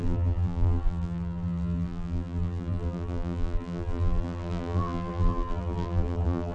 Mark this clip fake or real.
fake